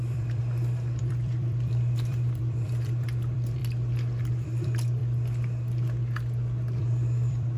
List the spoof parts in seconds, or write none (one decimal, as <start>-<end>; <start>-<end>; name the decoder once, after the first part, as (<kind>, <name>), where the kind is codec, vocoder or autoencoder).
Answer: 0.0-0.4 (vocoder, BigVGAN v2); 1.0-3.6; 4.2-5.0; 6.8-7.6